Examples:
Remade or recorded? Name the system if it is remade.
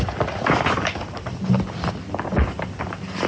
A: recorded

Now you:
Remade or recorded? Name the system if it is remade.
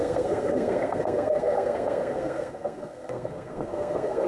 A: remade, codec, SNAC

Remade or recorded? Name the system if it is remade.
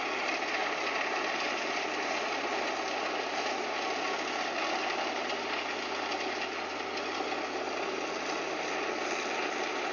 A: recorded